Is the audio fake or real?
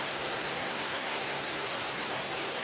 fake